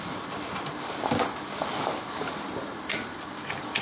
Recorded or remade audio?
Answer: recorded